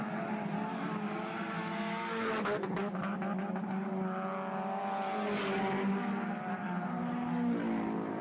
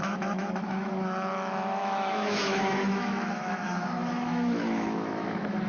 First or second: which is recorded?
first